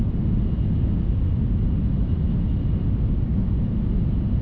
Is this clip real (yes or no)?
yes